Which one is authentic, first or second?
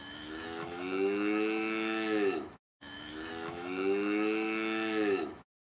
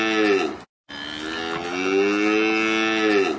second